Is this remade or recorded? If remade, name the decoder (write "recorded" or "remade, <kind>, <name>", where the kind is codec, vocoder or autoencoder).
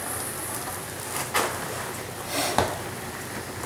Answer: remade, vocoder, BigVGAN v2